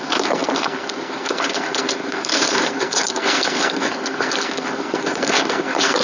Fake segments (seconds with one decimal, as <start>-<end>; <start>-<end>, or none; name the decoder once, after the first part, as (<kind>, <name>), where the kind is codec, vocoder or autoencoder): 0.0-6.0 (codec, SNAC)